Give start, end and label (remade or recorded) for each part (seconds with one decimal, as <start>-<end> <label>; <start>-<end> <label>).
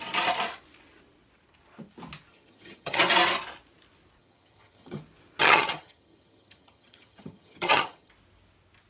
0.0-2.3 recorded; 2.3-3.0 remade; 3.0-4.2 recorded; 4.2-5.0 remade; 5.0-5.4 recorded; 5.4-8.1 remade; 8.1-8.9 recorded